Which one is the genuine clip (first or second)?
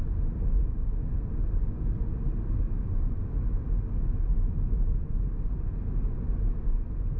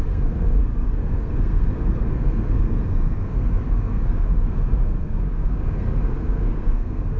first